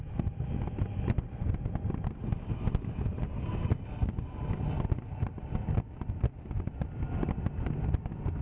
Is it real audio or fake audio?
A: real